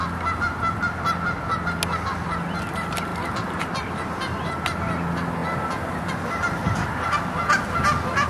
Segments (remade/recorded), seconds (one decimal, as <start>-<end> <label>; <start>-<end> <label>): 0.0-3.1 recorded; 3.1-3.6 remade; 3.6-8.3 recorded